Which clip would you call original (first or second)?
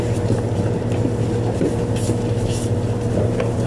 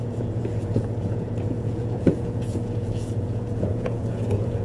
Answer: first